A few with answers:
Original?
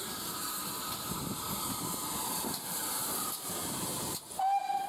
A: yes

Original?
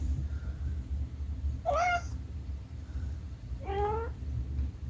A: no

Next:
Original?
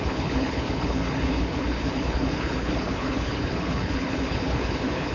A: no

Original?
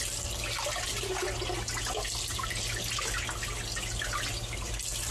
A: yes